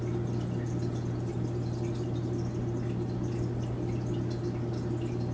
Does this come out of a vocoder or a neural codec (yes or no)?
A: no